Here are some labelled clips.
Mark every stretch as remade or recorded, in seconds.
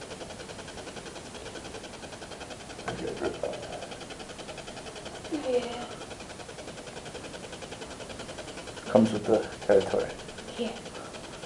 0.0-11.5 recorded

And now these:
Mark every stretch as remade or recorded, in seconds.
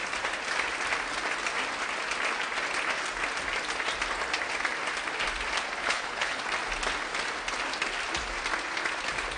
0.0-5.8 recorded; 5.8-6.4 remade; 6.4-9.4 recorded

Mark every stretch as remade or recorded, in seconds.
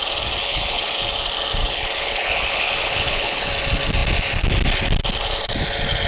0.0-0.4 recorded; 0.4-0.9 remade; 0.9-1.6 recorded; 1.6-3.5 remade; 3.5-6.1 recorded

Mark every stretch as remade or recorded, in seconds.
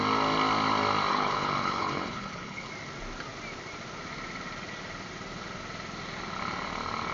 0.0-1.1 recorded; 1.1-2.7 remade; 2.7-7.1 recorded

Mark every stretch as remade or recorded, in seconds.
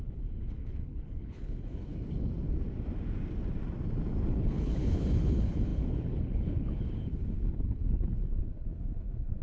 0.0-1.9 remade; 1.9-4.3 recorded; 4.3-9.4 remade